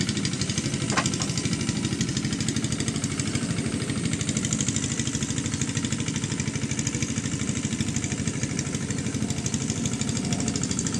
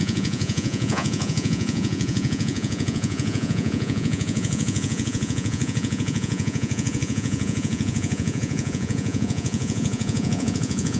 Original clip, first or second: first